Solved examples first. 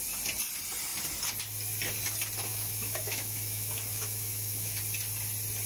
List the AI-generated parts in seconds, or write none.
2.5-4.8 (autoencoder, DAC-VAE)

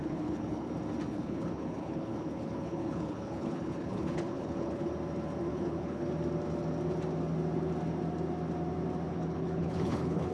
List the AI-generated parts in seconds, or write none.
0.0-0.7 (codec, HILCodec); 1.1-4.9; 5.5-6.1; 9.1-10.3

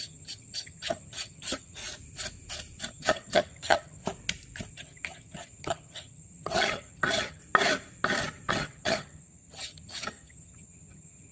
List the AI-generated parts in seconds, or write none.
0.0-1.8 (vocoder, HiFi-GAN); 2.9-4.0; 4.7-7.4; 8.5-11.3

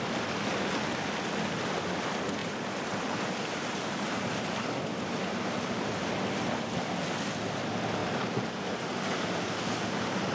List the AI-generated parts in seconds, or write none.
2.4-6.1 (vocoder, BigVGAN v2); 8.0-9.3

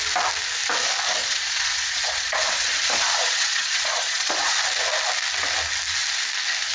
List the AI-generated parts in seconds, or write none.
1.2-4.5 (vocoder, Vocos)

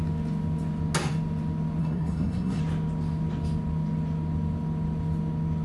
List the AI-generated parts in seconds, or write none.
1.8-2.6 (codec, SNAC)